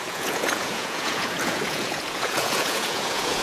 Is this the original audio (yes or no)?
no